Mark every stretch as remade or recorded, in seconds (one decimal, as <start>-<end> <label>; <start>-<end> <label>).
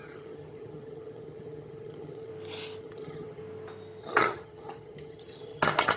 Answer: 0.0-2.3 remade; 2.3-2.8 recorded; 2.8-3.4 remade; 3.4-4.0 recorded; 4.0-6.0 remade